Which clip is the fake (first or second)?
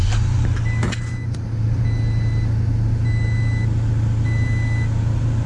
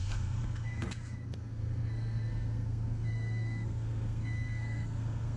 second